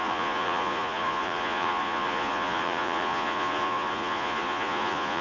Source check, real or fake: fake